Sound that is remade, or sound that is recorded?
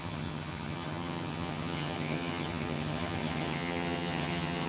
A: remade